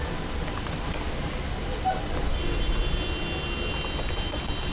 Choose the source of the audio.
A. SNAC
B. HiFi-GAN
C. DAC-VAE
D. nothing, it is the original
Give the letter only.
D